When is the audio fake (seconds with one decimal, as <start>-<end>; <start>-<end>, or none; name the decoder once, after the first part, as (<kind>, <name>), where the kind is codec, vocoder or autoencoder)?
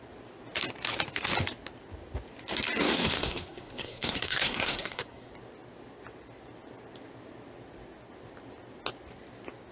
2.8-5.3 (codec, SNAC)